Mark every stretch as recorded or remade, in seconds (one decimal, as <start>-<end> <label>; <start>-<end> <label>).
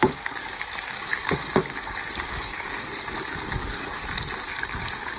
0.0-4.0 remade; 4.0-4.8 recorded; 4.8-5.2 remade